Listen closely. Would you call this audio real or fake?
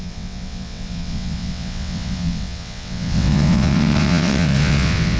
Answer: fake